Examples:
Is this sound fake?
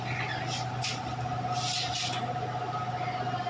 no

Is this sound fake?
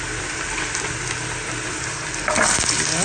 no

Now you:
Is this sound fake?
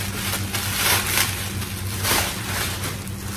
no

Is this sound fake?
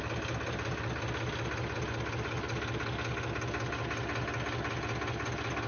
no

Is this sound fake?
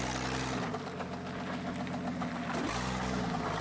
no